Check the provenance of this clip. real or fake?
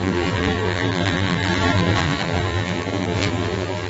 fake